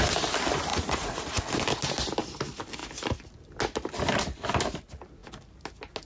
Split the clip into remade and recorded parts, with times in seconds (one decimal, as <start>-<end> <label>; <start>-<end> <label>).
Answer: 0.0-0.7 recorded; 0.7-1.4 remade; 1.4-6.0 recorded